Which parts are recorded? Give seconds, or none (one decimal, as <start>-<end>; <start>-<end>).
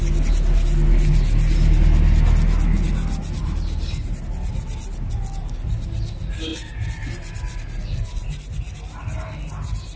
0.0-10.0